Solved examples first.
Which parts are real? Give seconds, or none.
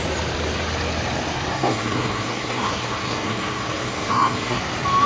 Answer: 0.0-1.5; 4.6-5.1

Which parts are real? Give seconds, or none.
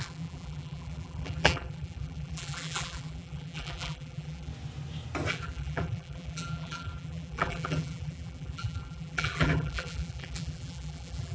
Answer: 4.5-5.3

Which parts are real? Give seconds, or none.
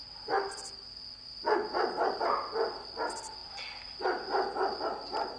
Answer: 0.0-5.4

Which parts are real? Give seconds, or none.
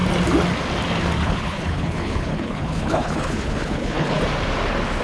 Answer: 0.0-1.2; 4.2-5.0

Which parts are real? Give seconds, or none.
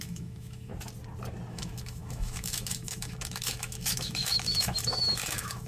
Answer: 0.7-1.5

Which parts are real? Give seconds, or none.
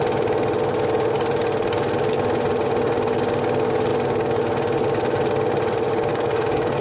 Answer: 0.0-6.1